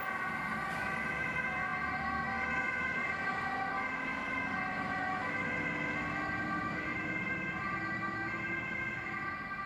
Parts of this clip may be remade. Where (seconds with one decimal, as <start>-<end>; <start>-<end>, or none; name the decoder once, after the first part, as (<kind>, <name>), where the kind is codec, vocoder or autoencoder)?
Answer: 6.9-8.3 (vocoder, BigVGAN v2)